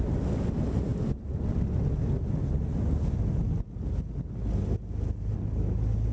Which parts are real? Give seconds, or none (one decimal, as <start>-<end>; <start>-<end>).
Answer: 0.0-6.1